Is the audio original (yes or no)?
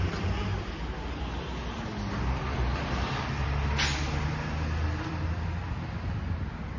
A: yes